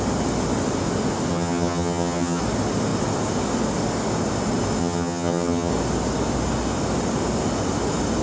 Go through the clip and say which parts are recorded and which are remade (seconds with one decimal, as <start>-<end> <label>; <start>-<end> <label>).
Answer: 0.0-1.3 recorded; 1.3-2.4 remade; 2.4-4.8 recorded; 4.8-5.7 remade; 5.7-8.2 recorded